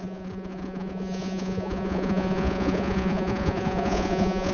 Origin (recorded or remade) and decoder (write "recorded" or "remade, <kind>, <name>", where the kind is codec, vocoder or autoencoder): remade, vocoder, Vocos